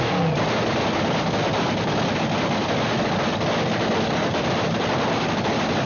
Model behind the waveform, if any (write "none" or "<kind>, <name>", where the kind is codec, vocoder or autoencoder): none